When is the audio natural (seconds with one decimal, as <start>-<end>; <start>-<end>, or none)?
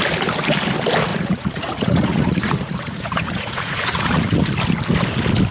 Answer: 0.0-1.1; 4.4-5.5